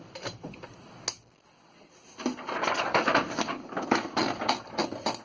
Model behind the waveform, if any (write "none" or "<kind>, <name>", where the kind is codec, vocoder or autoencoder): none